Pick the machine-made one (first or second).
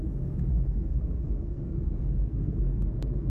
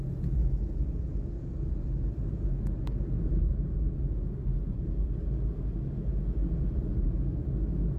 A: first